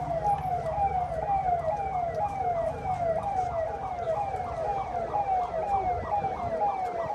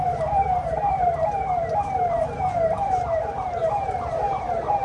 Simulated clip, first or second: second